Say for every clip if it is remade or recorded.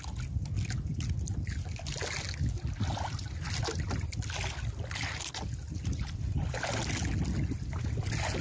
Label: recorded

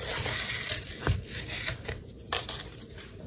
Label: recorded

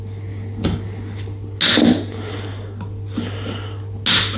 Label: recorded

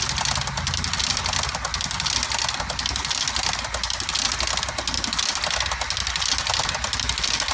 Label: recorded